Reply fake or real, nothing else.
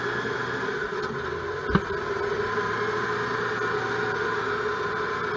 real